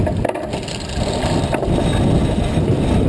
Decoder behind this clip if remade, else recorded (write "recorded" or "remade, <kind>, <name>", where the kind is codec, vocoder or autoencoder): recorded